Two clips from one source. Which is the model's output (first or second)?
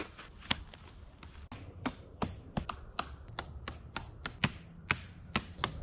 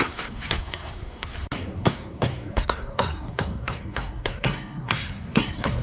second